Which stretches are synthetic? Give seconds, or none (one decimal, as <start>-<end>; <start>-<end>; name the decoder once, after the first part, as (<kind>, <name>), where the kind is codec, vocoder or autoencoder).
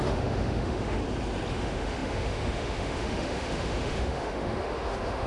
0.0-1.0 (autoencoder, DAC-VAE); 1.5-5.3